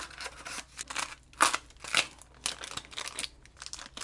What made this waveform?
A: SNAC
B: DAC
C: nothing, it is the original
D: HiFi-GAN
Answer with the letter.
C